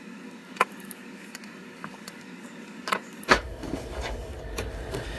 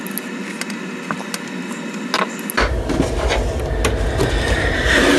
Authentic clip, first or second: second